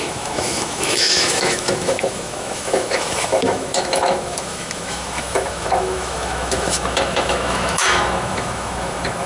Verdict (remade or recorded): remade